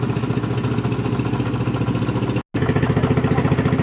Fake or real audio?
real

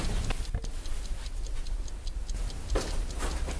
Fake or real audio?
real